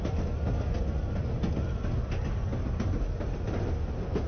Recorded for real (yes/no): yes